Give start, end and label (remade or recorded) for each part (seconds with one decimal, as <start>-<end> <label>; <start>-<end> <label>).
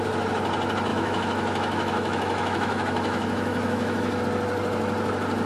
0.0-0.9 recorded; 0.9-4.2 remade; 4.2-5.5 recorded